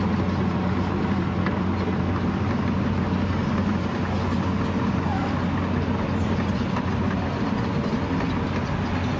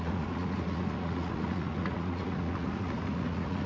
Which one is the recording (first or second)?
first